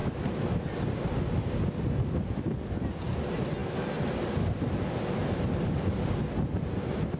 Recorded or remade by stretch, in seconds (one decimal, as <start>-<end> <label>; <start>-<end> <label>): 0.0-0.6 remade; 0.6-7.2 recorded